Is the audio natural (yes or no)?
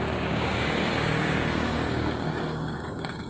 no